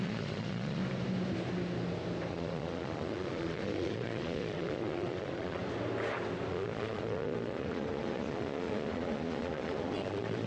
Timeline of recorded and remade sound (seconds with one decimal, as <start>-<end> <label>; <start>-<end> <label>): 0.0-0.8 remade; 0.8-2.3 recorded; 2.3-5.6 remade; 5.6-6.5 recorded; 6.5-10.5 remade